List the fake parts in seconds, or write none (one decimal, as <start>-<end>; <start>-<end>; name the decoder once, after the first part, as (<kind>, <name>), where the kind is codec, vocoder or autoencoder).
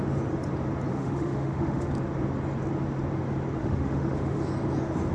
0.9-1.9 (autoencoder, DAC-VAE); 3.6-4.4